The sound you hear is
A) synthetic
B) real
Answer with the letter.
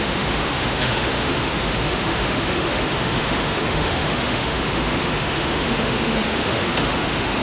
A